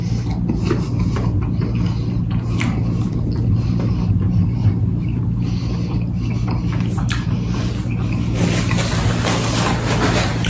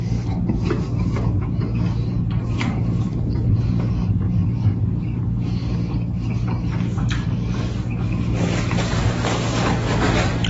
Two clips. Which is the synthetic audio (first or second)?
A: second